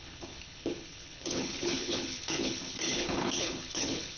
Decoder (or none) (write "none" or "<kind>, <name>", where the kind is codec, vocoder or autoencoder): codec, HILCodec